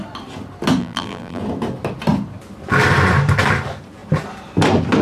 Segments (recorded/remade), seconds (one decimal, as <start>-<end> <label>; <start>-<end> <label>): 0.0-0.8 recorded; 0.8-1.4 remade; 1.4-5.0 recorded